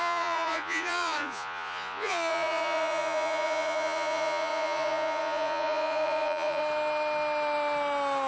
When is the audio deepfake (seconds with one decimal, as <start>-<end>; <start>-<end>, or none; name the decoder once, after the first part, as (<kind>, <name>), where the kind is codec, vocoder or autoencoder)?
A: 0.0-6.6 (vocoder, Vocos)